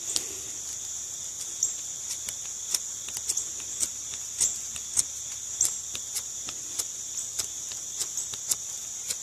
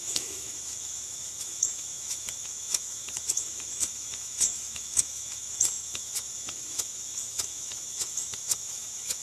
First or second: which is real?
first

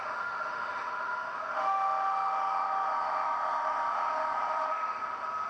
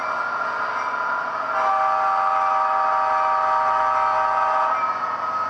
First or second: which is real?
second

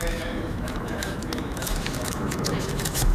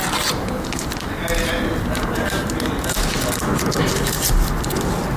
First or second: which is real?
second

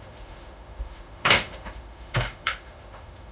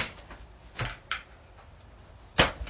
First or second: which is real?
second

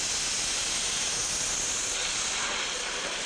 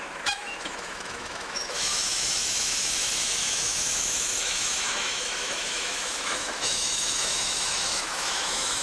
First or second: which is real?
first